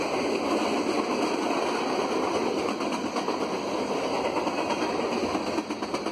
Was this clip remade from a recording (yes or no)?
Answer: no